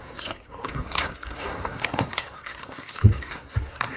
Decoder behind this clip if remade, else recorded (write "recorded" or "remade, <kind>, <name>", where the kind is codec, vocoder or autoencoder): remade, codec, SNAC